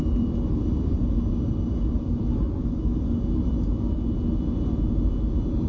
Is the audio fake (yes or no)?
no